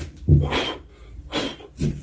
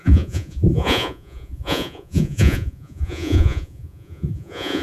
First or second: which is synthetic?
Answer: second